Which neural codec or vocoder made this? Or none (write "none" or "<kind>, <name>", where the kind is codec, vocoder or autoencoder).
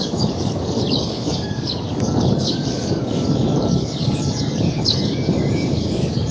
codec, DAC